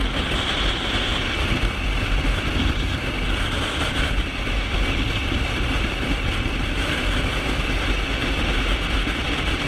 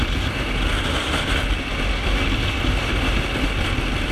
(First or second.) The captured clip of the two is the second